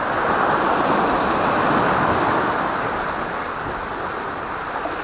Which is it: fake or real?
real